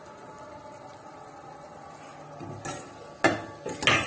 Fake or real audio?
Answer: real